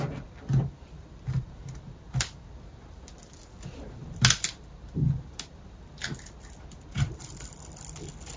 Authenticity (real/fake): real